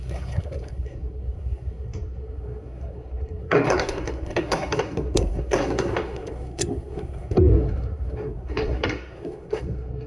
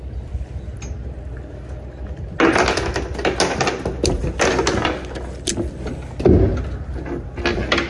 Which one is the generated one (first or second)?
first